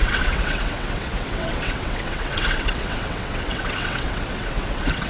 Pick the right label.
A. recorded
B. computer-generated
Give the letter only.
B